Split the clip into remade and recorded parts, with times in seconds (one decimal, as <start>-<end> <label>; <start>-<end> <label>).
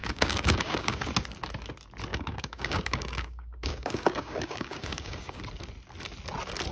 0.0-1.1 remade; 1.1-2.1 recorded; 2.1-5.4 remade; 5.4-6.7 recorded